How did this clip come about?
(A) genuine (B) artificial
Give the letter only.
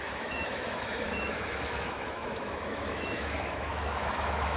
B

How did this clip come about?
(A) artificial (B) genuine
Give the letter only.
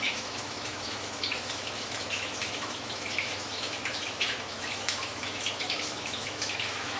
A